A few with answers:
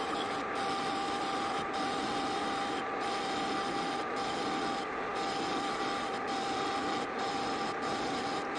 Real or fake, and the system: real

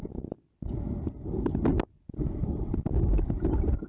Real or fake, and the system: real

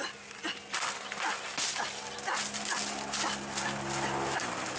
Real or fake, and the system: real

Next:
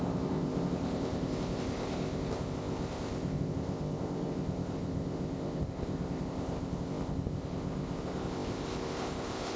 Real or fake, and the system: fake, codec, ZipCodec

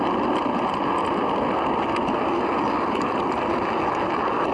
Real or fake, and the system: real